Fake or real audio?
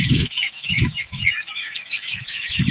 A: fake